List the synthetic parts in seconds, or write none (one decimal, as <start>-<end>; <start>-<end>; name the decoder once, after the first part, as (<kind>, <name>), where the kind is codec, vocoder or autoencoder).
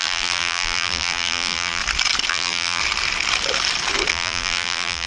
0.0-1.8 (vocoder, BigVGAN v2); 2.3-2.8; 4.1-5.1